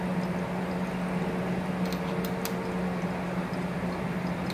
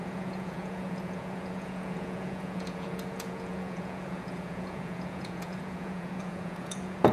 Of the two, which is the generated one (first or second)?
second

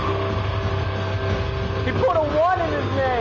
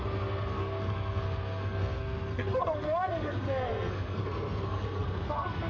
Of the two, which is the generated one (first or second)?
second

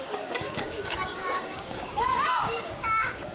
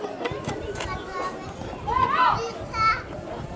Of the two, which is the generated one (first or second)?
first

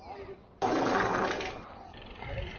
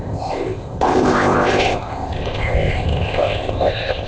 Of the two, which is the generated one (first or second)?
second